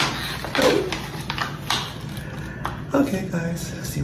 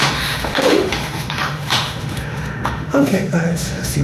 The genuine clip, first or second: first